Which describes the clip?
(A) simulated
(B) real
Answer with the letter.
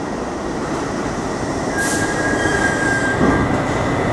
A